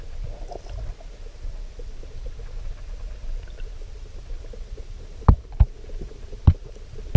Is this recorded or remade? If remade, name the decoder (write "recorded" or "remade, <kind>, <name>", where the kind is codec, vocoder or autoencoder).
recorded